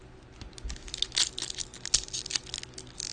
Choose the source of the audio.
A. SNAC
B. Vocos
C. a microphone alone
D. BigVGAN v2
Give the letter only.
C